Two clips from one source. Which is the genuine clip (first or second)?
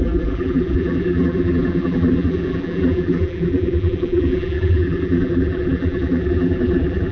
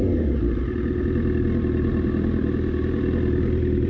second